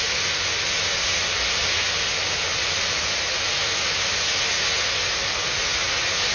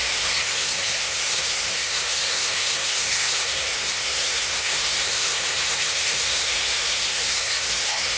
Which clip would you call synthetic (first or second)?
second